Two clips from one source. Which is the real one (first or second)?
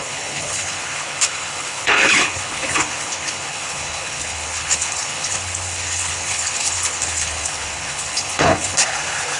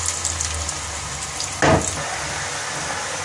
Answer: second